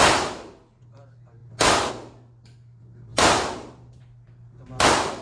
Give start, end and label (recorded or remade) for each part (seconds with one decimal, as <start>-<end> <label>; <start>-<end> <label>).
0.0-3.1 recorded; 3.1-4.8 remade; 4.8-5.2 recorded